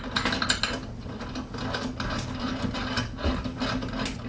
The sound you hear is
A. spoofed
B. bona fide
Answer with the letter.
B